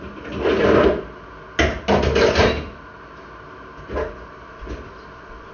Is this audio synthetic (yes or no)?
no